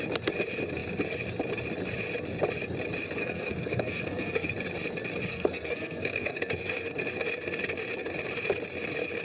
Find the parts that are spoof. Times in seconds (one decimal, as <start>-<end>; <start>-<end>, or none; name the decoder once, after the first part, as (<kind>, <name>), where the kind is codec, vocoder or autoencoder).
3.2-4.5 (codec, SNAC); 5.3-6.5